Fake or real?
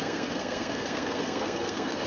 fake